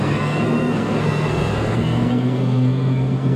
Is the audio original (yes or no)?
no